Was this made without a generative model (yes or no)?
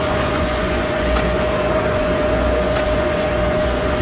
no